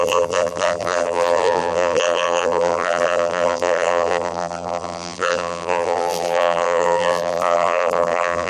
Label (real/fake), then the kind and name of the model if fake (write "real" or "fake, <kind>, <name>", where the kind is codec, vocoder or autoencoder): fake, vocoder, BigVGAN v2